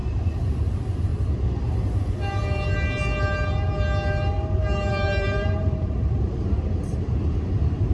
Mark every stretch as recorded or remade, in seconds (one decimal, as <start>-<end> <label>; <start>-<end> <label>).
0.0-1.1 remade; 1.1-4.9 recorded; 4.9-7.9 remade